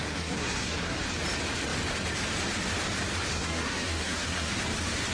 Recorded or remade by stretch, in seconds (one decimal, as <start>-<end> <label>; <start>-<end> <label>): 0.0-1.0 remade; 1.0-3.3 recorded; 3.3-4.5 remade; 4.5-5.1 recorded